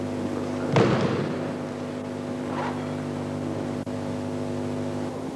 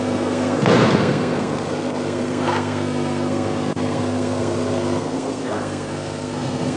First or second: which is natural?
first